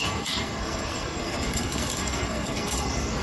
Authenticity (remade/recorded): remade